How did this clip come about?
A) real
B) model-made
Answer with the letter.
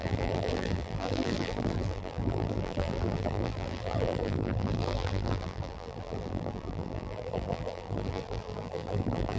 B